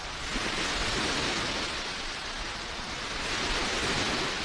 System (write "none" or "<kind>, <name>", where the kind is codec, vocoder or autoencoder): none